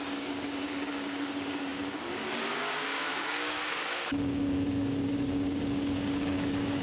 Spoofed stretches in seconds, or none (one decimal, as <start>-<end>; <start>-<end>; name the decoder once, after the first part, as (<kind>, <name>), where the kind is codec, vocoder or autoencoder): 0.0-6.8 (codec, DAC)